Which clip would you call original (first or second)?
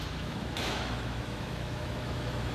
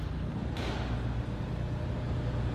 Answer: second